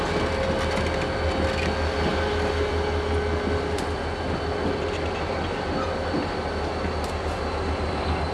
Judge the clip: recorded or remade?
recorded